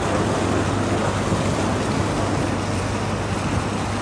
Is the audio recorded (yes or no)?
yes